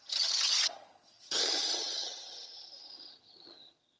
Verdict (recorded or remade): remade